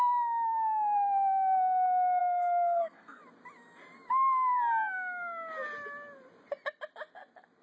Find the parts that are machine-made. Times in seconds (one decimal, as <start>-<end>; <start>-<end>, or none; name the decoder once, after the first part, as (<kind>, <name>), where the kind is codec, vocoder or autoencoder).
2.2-3.2 (codec, SNAC)